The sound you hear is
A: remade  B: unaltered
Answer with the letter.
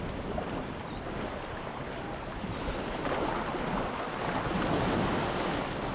B